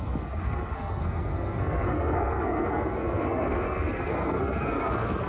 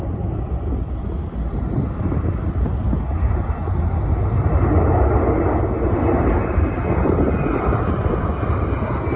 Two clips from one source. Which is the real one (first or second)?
second